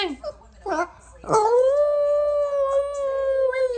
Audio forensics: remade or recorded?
recorded